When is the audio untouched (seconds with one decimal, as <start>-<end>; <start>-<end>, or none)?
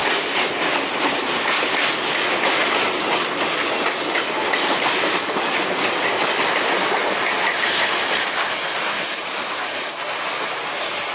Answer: 0.0-11.1